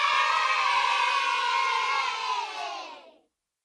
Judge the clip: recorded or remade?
remade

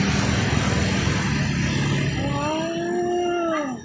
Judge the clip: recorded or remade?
recorded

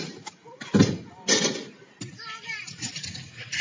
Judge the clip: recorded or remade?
recorded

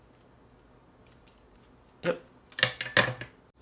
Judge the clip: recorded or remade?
recorded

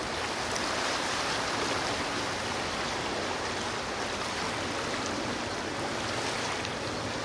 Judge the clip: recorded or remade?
recorded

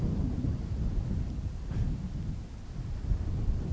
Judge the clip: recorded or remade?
recorded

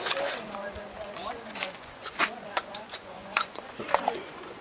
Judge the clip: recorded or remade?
remade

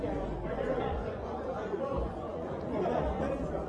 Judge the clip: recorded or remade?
remade